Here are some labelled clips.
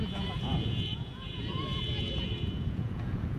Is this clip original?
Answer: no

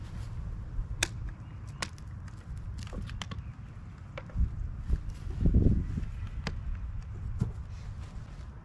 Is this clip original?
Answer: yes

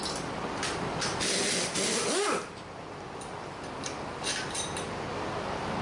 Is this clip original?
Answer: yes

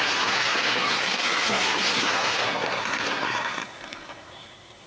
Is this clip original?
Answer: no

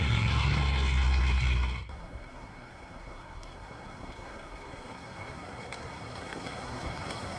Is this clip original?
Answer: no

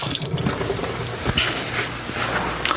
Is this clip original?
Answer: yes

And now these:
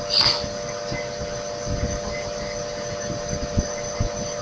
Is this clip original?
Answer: yes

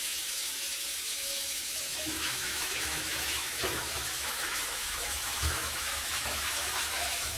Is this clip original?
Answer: no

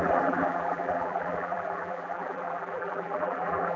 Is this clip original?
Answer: no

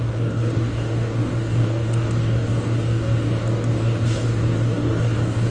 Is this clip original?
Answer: no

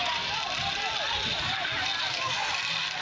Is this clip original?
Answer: yes